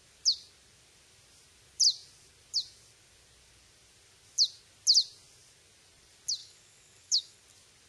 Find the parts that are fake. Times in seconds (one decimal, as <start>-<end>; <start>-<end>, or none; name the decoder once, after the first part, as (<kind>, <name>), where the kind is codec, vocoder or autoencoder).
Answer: 6.4-7.4 (codec, DAC)